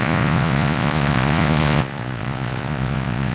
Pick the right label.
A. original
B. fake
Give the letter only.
B